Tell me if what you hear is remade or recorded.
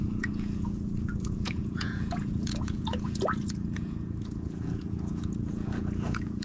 remade